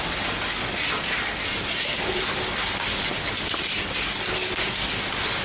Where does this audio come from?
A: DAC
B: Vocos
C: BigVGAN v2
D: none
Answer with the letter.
D